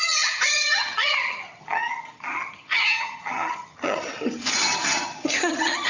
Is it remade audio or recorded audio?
remade